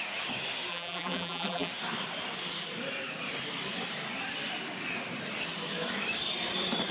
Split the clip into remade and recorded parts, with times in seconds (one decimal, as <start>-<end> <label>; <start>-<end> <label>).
0.0-0.7 recorded; 0.7-1.7 remade; 1.7-6.9 recorded